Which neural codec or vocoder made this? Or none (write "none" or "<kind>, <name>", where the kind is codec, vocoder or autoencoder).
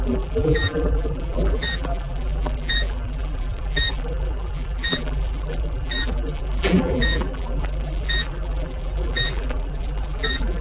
vocoder, BigVGAN v2